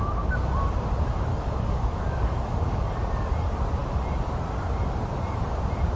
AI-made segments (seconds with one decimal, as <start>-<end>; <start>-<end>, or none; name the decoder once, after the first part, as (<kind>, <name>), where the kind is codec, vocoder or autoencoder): 1.3-2.9 (codec, DAC)